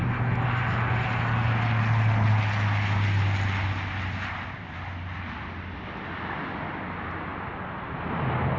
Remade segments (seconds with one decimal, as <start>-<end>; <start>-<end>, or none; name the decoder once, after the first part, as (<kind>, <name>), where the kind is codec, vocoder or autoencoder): none